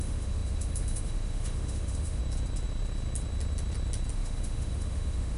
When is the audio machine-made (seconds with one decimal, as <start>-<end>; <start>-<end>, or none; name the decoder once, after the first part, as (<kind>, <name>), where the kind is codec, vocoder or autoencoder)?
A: 0.0-2.2 (autoencoder, DAC-VAE); 4.1-5.4